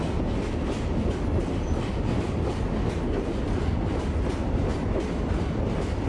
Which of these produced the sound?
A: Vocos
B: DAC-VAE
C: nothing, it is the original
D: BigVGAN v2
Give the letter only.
C